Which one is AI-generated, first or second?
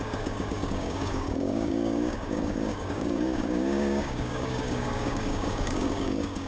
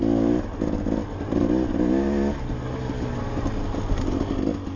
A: first